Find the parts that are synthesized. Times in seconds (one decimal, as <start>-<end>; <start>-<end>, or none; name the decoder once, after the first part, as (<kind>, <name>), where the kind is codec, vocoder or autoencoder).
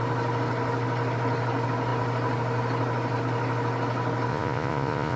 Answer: 4.3-5.2 (vocoder, Vocos)